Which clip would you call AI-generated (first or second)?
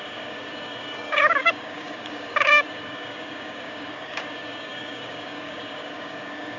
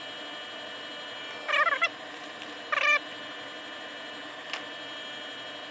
first